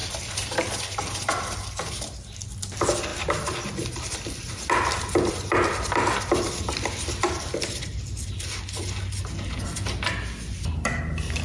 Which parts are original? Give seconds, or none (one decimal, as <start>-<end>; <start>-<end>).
0.0-11.4